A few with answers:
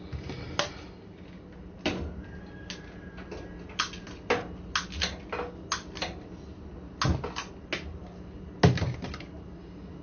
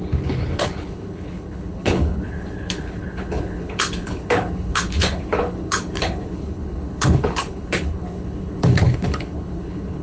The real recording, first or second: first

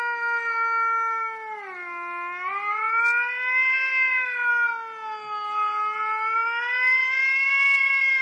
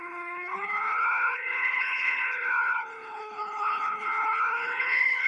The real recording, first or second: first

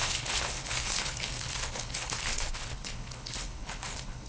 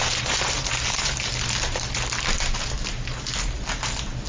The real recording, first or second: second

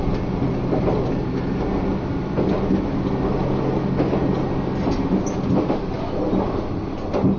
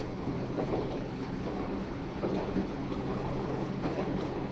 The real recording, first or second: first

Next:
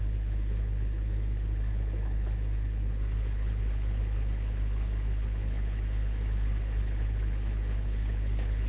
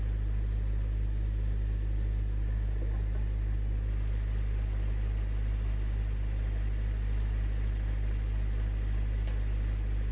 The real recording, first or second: second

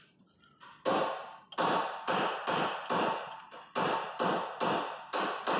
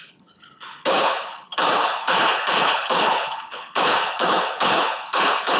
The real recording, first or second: first